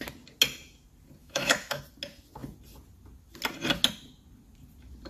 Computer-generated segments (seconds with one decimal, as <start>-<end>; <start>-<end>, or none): 1.2-1.8